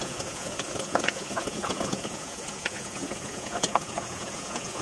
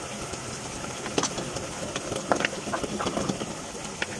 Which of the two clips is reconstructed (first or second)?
first